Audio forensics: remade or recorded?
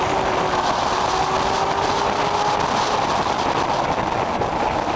recorded